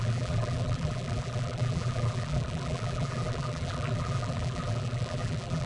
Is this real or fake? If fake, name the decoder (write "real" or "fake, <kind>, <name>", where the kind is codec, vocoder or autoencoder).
fake, vocoder, BigVGAN v2